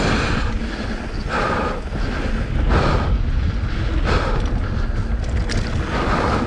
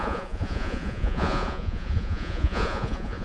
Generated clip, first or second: second